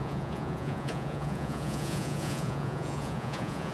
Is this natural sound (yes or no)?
no